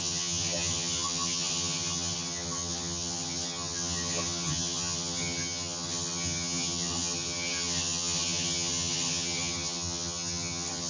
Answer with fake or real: fake